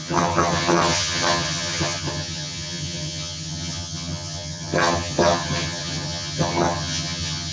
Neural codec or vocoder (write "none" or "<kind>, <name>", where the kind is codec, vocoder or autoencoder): vocoder, HiFi-GAN